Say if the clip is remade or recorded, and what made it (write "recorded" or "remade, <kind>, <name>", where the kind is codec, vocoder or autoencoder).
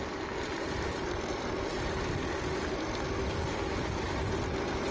recorded